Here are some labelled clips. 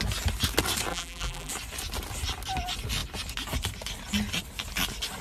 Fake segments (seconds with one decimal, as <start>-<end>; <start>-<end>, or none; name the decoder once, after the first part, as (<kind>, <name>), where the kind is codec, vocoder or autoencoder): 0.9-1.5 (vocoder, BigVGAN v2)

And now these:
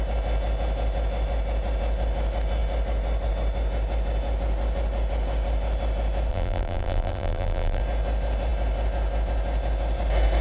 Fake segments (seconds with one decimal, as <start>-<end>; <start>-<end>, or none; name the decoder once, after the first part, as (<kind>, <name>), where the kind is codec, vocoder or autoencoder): 6.3-7.8 (vocoder, BigVGAN v2)

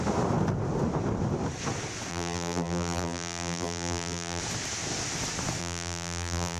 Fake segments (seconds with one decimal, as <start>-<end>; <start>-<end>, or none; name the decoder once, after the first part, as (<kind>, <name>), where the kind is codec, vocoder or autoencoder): 2.1-4.4 (vocoder, BigVGAN v2); 5.6-6.6

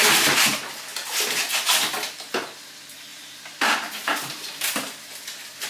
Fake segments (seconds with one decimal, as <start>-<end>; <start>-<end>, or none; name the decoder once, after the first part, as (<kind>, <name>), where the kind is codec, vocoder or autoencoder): 3.1-5.1 (vocoder, BigVGAN v2)